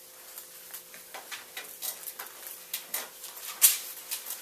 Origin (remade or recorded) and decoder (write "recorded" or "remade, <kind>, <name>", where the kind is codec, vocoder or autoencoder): recorded